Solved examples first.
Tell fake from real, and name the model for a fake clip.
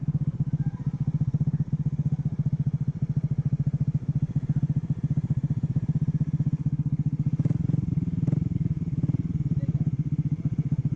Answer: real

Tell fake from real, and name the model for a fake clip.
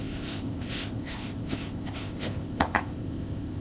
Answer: fake, codec, ZipCodec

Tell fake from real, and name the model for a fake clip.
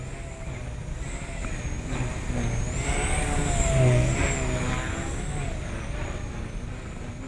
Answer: real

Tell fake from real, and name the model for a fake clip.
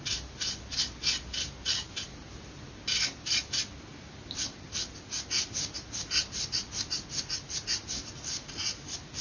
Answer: real